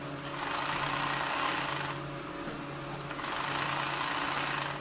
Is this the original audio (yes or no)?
yes